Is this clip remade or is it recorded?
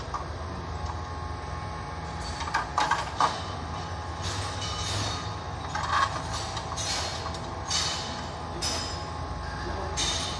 recorded